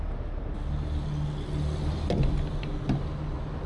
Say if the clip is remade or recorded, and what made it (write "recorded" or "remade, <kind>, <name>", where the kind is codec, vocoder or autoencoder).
recorded